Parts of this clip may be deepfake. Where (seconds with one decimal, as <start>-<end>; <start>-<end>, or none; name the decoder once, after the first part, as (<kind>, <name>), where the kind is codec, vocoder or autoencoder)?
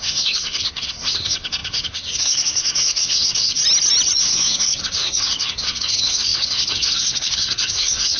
0.0-3.6 (codec, SNAC); 4.2-8.2